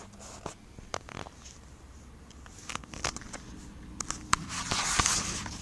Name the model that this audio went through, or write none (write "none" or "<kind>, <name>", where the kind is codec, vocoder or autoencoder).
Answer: none